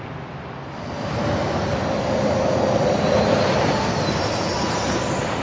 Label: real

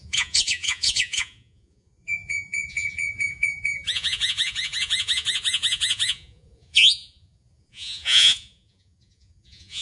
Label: fake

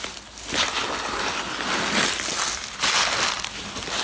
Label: real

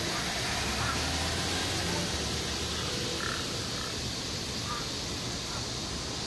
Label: real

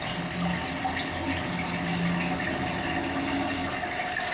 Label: real